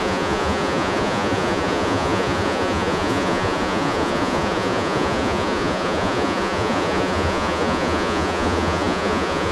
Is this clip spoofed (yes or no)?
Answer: yes